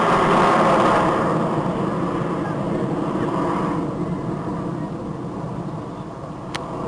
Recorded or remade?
recorded